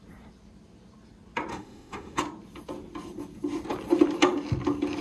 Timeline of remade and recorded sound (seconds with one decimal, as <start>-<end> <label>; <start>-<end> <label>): 0.0-1.5 recorded; 1.5-2.2 remade; 2.2-5.0 recorded

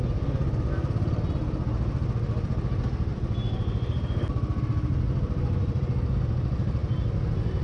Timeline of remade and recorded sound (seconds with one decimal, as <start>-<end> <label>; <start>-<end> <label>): 0.0-7.6 recorded

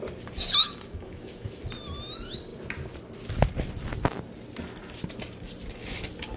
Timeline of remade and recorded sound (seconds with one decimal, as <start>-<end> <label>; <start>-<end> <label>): 0.0-0.6 recorded; 0.6-1.6 remade; 1.6-6.4 recorded

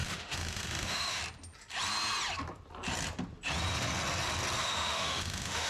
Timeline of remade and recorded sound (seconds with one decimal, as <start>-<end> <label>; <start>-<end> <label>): 0.0-1.2 remade; 1.2-4.6 recorded; 4.6-5.7 remade

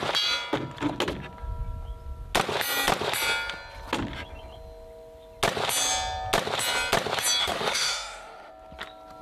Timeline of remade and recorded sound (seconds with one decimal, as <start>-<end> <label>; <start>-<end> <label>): 0.0-7.4 recorded; 7.4-8.5 remade; 8.5-9.2 recorded

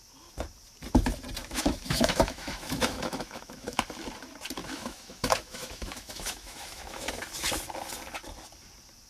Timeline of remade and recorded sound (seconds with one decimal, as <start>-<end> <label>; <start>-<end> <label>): 0.0-1.4 recorded; 1.4-3.8 remade; 3.8-4.6 recorded; 4.6-7.1 remade; 7.1-9.1 recorded